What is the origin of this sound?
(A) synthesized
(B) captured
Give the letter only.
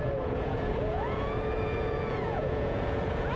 A